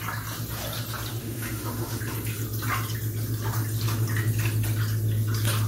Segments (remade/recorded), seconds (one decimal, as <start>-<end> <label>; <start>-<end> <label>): 0.0-1.2 recorded; 1.2-2.0 remade; 2.0-5.7 recorded